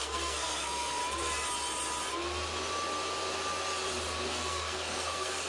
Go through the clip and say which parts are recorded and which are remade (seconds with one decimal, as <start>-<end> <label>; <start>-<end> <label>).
0.0-1.0 remade; 1.0-4.3 recorded; 4.3-5.5 remade